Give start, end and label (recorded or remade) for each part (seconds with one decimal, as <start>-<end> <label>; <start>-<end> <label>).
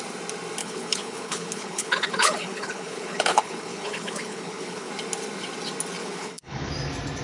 0.0-0.6 recorded; 0.6-4.9 remade; 4.9-6.0 recorded; 6.0-6.7 remade; 6.7-7.2 recorded